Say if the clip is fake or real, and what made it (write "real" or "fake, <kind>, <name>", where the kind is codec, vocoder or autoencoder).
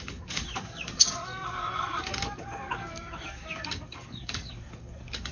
fake, codec, DAC